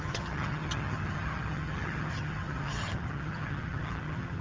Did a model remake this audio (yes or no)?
yes